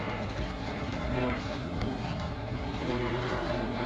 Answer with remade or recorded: remade